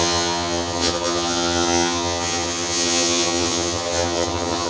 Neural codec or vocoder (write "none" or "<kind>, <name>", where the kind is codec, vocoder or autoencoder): vocoder, HiFi-GAN